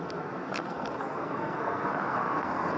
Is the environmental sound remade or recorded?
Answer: remade